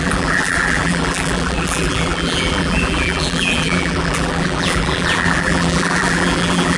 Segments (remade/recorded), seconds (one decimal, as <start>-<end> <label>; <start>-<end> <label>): 0.0-6.8 remade